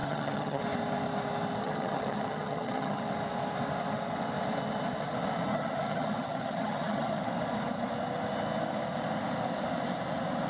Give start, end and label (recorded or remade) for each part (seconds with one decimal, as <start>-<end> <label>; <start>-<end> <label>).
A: 0.0-0.6 remade; 0.6-1.6 recorded; 1.6-3.0 remade; 3.0-5.5 recorded; 5.5-7.3 remade; 7.3-10.5 recorded